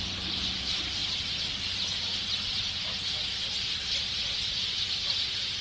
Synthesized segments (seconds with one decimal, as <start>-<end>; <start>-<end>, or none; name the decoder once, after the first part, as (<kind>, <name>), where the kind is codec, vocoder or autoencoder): none